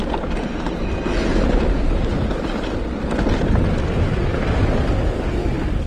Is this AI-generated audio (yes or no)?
no